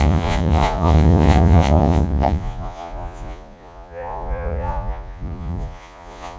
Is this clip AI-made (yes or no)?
yes